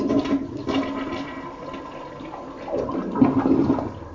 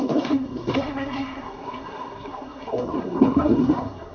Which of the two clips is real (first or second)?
first